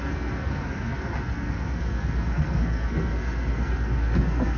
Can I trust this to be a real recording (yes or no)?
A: no